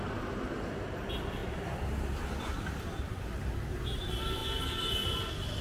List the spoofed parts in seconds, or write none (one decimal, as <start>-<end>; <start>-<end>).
none